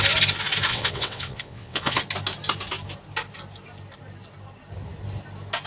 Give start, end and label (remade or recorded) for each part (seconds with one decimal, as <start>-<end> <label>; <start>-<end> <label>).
0.0-0.7 recorded; 0.7-2.0 remade; 2.0-5.7 recorded